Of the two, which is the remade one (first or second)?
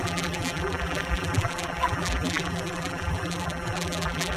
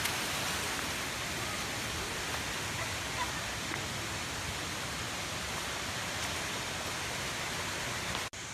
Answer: first